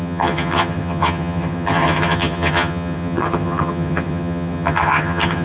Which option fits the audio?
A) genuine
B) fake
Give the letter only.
B